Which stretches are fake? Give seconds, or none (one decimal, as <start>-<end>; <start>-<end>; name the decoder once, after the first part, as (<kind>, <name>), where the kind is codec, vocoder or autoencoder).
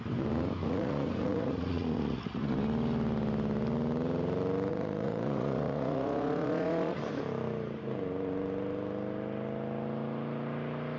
0.6-2.5 (vocoder, Vocos); 4.7-7.0